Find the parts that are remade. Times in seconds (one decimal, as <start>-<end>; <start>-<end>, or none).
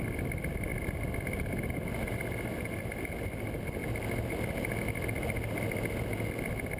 none